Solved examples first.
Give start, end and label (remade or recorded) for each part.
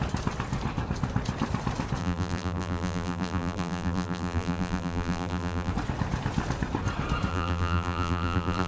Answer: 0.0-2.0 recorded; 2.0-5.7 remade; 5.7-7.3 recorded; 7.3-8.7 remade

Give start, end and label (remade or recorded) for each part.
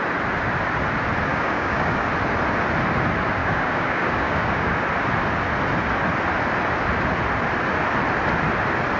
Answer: 0.0-1.3 recorded; 1.3-2.1 remade; 2.1-3.4 recorded; 3.4-4.7 remade; 4.7-9.0 recorded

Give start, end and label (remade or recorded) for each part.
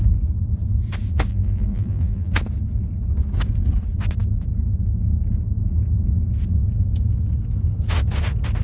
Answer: 0.0-1.3 recorded; 1.3-2.3 remade; 2.3-8.6 recorded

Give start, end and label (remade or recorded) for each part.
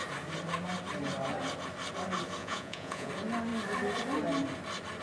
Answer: 0.0-2.4 recorded; 2.4-3.1 remade; 3.1-5.0 recorded